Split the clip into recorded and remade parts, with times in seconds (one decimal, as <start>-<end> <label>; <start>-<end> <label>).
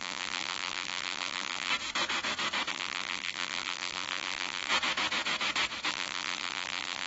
0.0-1.7 remade; 1.7-2.7 recorded; 2.7-4.7 remade; 4.7-5.9 recorded; 5.9-7.1 remade